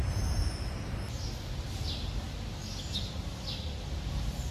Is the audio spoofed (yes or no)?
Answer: no